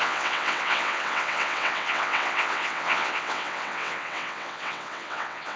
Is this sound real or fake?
fake